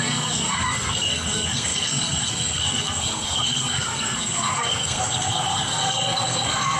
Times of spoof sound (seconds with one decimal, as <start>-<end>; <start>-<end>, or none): 0.0-6.8